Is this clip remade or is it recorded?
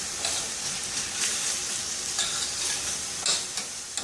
recorded